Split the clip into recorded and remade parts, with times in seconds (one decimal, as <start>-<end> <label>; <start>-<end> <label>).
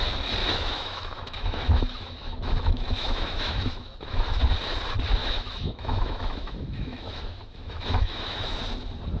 0.0-0.4 recorded; 0.4-4.4 remade; 4.4-5.2 recorded; 5.2-8.6 remade; 8.6-9.2 recorded